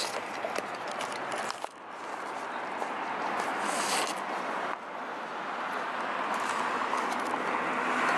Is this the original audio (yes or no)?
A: yes